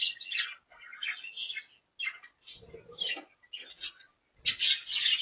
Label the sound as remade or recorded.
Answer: recorded